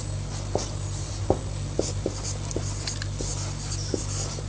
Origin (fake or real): real